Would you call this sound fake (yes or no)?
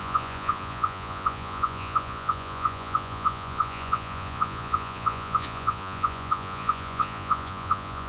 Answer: yes